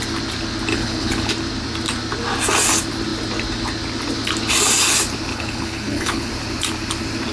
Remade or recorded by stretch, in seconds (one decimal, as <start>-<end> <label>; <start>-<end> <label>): 0.0-0.7 recorded; 0.7-1.3 remade; 1.3-5.3 recorded; 5.3-6.3 remade; 6.3-7.3 recorded